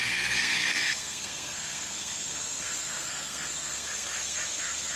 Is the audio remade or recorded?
remade